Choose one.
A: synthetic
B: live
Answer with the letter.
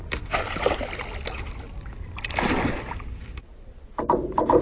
B